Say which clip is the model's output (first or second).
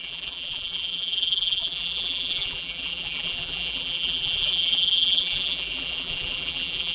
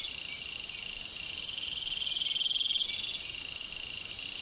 first